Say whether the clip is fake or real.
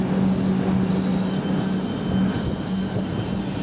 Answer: real